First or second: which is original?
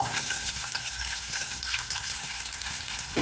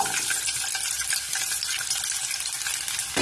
second